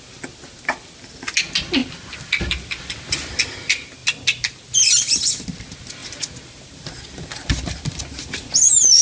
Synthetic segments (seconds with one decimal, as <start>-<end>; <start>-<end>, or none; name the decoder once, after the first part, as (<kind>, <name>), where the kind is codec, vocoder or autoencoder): none